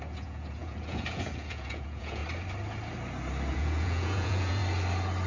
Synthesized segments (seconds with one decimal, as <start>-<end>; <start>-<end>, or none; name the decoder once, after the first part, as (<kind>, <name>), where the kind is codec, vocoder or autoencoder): 0.0-2.2 (vocoder, Vocos); 3.5-4.6